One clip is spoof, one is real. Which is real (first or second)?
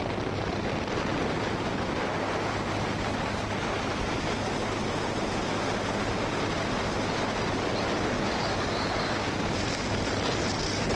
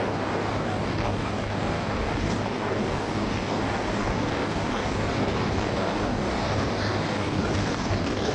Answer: first